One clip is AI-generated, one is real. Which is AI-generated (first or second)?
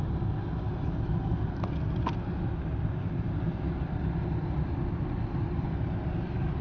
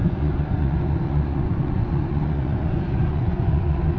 second